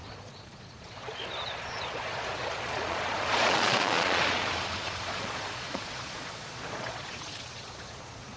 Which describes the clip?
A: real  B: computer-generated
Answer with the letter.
B